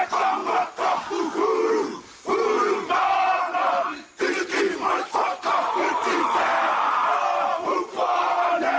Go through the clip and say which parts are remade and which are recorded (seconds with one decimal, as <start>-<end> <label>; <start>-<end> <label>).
0.0-3.3 recorded; 3.3-5.9 remade; 5.9-8.8 recorded